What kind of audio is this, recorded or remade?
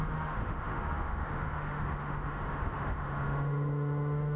remade